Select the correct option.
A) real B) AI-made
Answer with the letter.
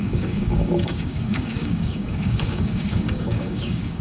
B